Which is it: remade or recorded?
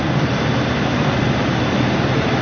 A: remade